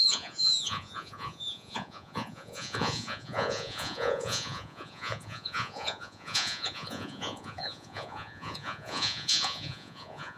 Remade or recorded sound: remade